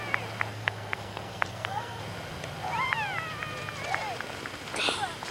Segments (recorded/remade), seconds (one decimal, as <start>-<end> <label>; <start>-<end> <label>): 0.0-0.5 recorded; 0.5-2.0 remade; 2.0-5.3 recorded